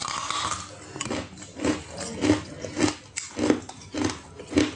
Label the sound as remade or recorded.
recorded